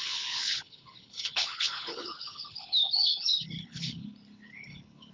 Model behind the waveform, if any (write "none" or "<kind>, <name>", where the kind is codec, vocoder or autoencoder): codec, HILCodec